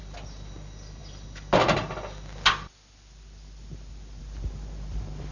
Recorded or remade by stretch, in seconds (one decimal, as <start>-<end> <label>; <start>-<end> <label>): 0.0-5.3 recorded